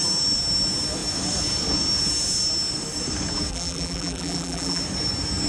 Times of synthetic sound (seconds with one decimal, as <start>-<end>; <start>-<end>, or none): 3.5-4.8

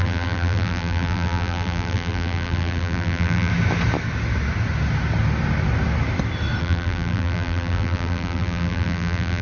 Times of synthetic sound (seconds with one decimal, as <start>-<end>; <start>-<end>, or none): 0.0-3.5; 6.6-9.4

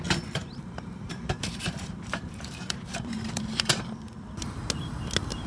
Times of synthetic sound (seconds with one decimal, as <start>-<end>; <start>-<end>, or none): 0.4-3.7